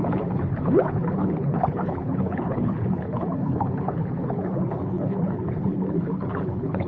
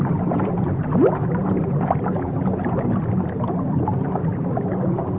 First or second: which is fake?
first